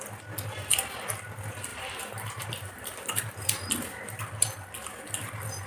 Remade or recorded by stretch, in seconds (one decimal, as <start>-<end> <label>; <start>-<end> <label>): 0.0-1.7 recorded; 1.7-3.7 remade; 3.7-5.7 recorded